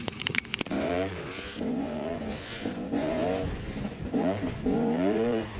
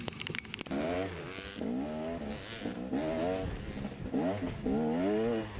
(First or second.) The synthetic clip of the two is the first